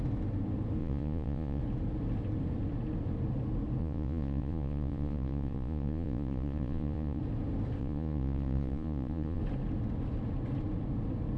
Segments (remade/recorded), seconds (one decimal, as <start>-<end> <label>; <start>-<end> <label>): 0.0-0.8 recorded; 0.8-1.6 remade; 1.6-3.8 recorded; 3.8-7.2 remade; 7.2-7.8 recorded; 7.8-9.4 remade; 9.4-11.4 recorded